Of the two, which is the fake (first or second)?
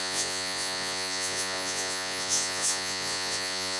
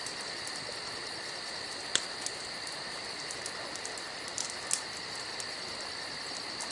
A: first